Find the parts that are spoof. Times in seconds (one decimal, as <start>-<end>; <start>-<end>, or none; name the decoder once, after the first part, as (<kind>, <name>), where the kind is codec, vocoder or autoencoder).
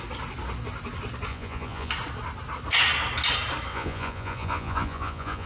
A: 1.3-1.9 (vocoder, Vocos); 3.7-5.5